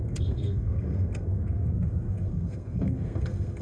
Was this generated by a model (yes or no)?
yes